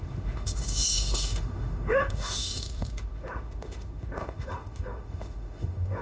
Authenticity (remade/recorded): remade